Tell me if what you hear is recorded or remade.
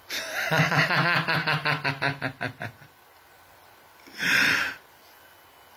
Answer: recorded